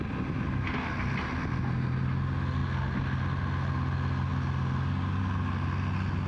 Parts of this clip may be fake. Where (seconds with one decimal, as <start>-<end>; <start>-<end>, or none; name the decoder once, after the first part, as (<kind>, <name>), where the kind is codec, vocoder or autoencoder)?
none